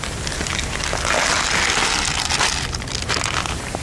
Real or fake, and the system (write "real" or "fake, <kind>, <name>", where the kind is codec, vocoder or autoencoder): real